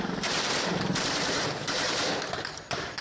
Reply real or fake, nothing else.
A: fake